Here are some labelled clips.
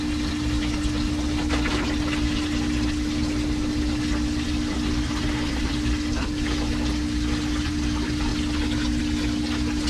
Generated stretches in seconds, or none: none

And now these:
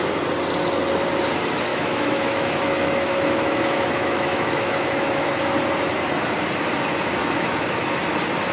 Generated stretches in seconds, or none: 1.7-5.3 (autoencoder, DAC-VAE); 7.2-7.8

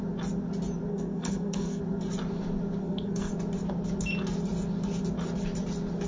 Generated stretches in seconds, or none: 0.9-1.8 (codec, SNAC); 2.8-3.3

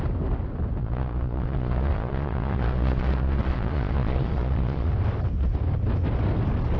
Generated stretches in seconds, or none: 0.8-4.9 (vocoder, Vocos)

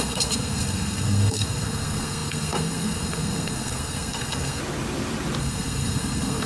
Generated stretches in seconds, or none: 0.0-4.6 (codec, SNAC); 5.4-6.5

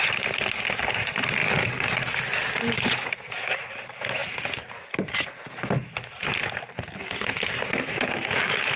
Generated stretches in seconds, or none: 4.2-6.5 (vocoder, BigVGAN v2)

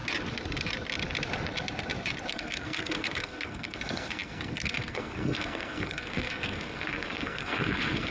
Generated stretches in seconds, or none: 2.3-8.1 (codec, SNAC)

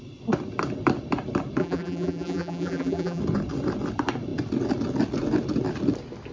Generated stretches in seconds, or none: 1.6-3.2 (vocoder, BigVGAN v2)